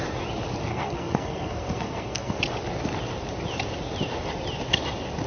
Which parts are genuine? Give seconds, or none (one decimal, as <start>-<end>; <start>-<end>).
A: 0.0-0.7; 2.4-5.3